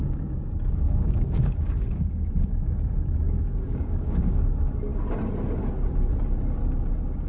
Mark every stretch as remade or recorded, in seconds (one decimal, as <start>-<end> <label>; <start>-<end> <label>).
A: 0.0-4.4 remade; 4.4-7.3 recorded